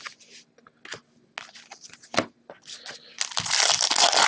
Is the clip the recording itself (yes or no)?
yes